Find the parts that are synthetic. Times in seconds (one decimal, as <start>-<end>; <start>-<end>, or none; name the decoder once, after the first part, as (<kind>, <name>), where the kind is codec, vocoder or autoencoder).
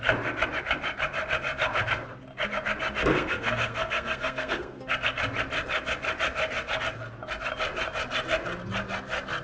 3.1-4.8 (codec, SNAC)